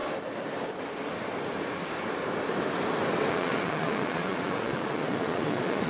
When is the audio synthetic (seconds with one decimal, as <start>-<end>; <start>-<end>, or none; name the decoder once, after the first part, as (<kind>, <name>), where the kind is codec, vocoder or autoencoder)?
3.3-5.9 (vocoder, Vocos)